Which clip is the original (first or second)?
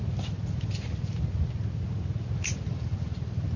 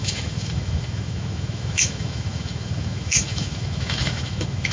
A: first